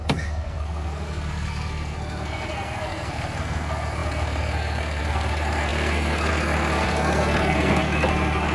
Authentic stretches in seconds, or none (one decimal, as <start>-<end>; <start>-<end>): none